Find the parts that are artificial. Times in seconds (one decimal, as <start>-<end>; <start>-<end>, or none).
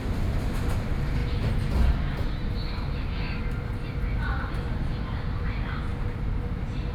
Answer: none